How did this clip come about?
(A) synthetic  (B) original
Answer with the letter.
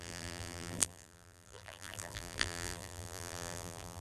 A